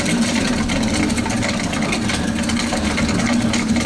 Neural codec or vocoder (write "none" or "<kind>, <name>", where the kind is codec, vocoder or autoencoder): none